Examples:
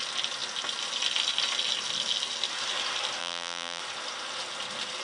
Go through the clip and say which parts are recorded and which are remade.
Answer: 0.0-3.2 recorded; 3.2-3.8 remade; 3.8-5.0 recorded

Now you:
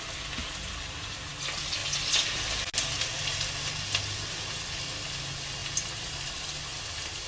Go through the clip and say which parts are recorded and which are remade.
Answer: 0.0-0.4 recorded; 0.4-1.3 remade; 1.3-7.3 recorded

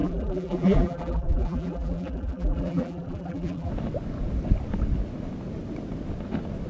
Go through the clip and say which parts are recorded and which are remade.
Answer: 0.0-3.7 remade; 3.7-6.7 recorded

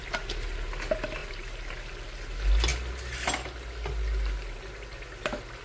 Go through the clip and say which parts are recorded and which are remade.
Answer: 0.0-1.2 recorded; 1.2-1.7 remade; 1.7-5.6 recorded

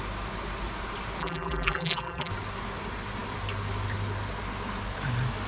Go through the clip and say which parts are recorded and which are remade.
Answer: 0.0-1.2 recorded; 1.2-2.3 remade; 2.3-5.5 recorded

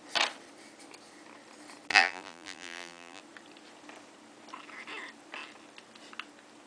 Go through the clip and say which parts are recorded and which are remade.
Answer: 0.0-1.9 recorded; 1.9-3.2 remade; 3.2-6.7 recorded